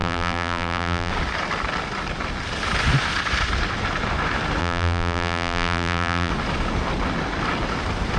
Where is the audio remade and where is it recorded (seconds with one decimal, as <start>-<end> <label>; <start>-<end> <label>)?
0.0-1.1 remade; 1.1-4.6 recorded; 4.6-6.3 remade; 6.3-8.2 recorded